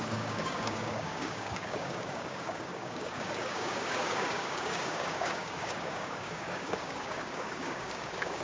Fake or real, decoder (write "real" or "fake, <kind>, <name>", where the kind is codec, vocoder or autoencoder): fake, codec, DAC